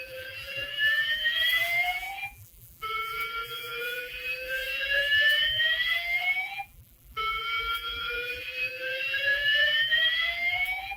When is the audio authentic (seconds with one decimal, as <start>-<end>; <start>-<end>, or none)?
none